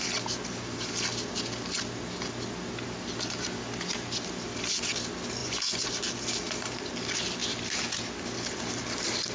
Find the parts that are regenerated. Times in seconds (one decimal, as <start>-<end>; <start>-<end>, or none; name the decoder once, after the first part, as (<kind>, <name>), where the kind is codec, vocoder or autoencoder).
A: 5.4-5.9 (vocoder, Vocos)